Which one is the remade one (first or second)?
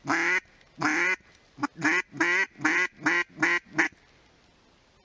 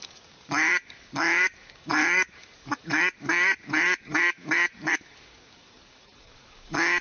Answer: second